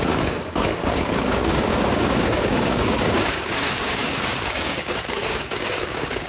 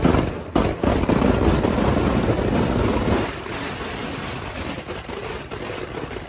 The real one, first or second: second